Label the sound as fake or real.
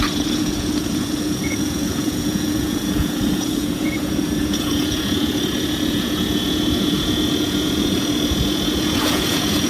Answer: fake